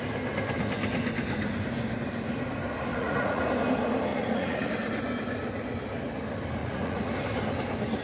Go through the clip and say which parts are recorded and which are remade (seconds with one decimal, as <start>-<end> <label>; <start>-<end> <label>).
0.0-2.9 recorded; 2.9-3.4 remade; 3.4-4.1 recorded; 4.1-4.7 remade; 4.7-6.6 recorded; 6.6-7.1 remade; 7.1-8.0 recorded